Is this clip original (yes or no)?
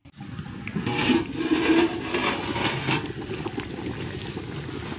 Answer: yes